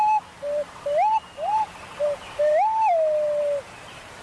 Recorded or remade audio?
recorded